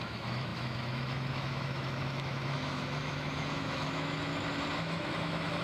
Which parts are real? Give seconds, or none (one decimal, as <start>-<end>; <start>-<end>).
4.3-4.8